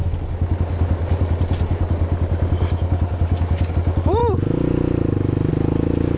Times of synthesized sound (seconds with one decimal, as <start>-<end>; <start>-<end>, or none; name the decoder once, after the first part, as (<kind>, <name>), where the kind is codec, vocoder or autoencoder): none